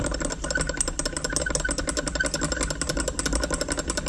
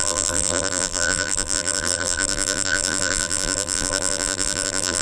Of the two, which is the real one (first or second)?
first